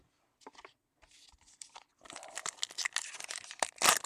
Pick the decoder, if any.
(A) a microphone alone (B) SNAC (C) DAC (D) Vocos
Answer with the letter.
A